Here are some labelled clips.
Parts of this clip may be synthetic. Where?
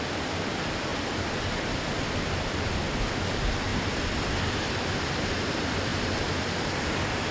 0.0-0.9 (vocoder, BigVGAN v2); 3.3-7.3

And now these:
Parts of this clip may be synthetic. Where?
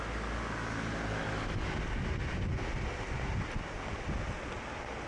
none